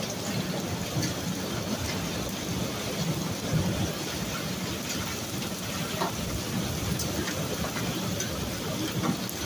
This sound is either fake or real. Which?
real